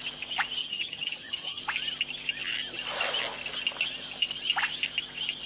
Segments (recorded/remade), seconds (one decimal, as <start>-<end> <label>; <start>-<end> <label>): 0.0-0.6 recorded; 0.6-1.6 remade; 1.6-5.5 recorded